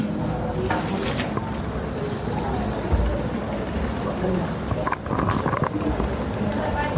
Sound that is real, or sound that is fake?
real